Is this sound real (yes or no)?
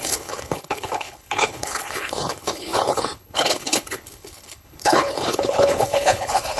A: no